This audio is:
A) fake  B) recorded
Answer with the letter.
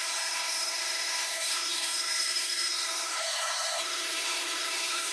A